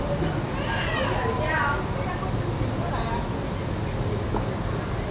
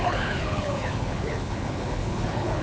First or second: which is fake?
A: second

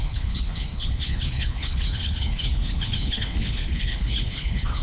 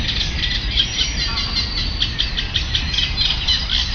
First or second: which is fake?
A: first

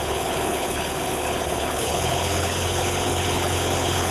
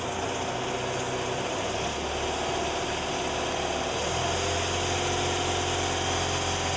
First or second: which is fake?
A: first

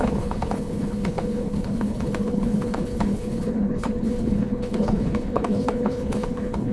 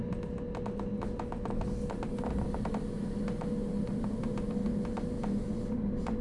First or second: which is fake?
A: first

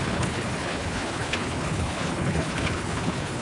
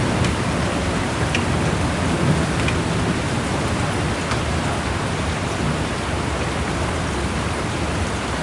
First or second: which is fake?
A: first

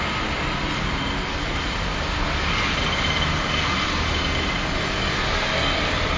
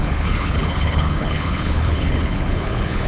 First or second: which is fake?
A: second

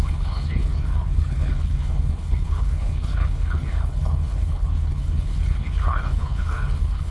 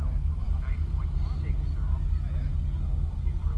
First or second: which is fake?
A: first